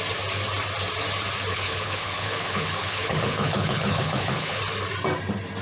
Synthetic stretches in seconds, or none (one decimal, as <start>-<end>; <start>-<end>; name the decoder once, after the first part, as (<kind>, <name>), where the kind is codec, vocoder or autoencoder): 1.5-4.6 (codec, HILCodec)